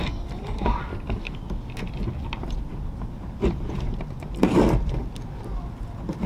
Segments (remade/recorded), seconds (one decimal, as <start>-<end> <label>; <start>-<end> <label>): 0.0-0.9 recorded; 0.9-1.4 remade; 1.4-6.3 recorded